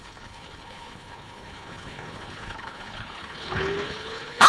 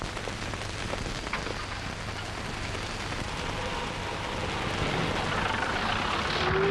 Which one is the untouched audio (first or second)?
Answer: second